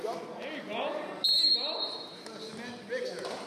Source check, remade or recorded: recorded